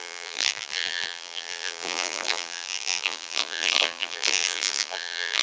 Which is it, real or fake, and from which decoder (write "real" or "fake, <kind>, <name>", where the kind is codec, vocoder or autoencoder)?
fake, vocoder, BigVGAN v2